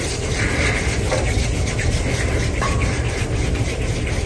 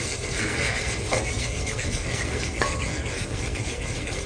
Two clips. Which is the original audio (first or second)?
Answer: first